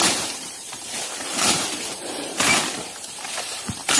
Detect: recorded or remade remade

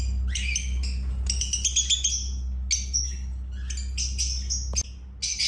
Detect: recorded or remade recorded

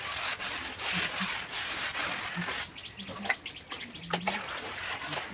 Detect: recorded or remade recorded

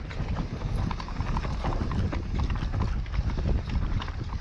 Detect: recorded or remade recorded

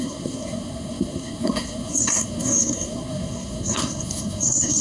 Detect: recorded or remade remade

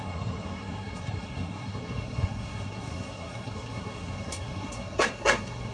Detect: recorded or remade remade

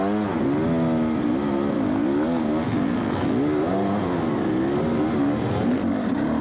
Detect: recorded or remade recorded